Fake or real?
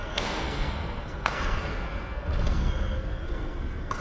fake